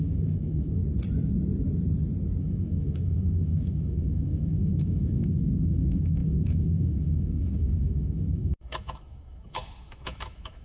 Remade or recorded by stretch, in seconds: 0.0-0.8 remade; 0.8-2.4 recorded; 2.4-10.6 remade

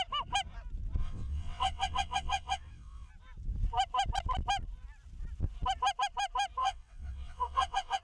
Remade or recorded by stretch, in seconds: 0.0-1.0 recorded; 1.0-3.1 remade; 3.1-6.6 recorded; 6.6-8.0 remade

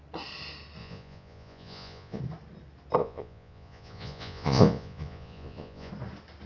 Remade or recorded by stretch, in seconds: 0.0-0.8 recorded; 0.8-2.2 remade; 2.2-3.0 recorded; 3.0-5.9 remade; 5.9-6.5 recorded

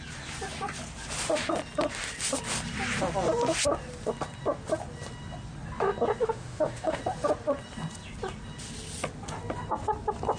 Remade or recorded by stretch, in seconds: 0.0-6.2 recorded; 6.2-7.0 remade; 7.0-10.4 recorded

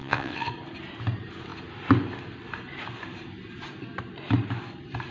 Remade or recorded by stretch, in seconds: 0.0-0.5 remade; 0.5-5.1 recorded